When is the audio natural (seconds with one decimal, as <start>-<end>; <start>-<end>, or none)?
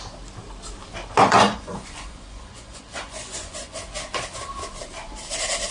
0.0-1.2; 3.8-5.7